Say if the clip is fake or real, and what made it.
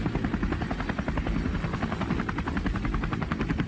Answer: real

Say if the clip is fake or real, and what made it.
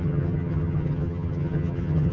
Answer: fake, vocoder, HiFi-GAN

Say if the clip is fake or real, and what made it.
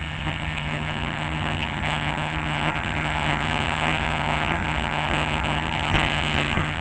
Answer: fake, vocoder, HiFi-GAN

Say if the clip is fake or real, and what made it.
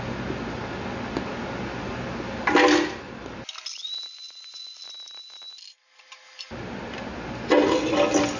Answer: real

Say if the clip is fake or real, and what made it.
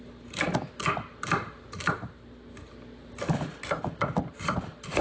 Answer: real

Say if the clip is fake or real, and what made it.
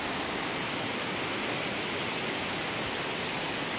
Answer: real